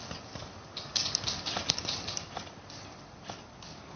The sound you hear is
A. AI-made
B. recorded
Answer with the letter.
B